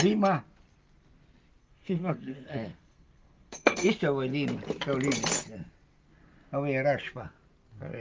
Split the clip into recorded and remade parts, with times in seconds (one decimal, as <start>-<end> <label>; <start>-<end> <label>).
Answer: 0.0-1.6 recorded; 1.6-3.9 remade; 3.9-8.0 recorded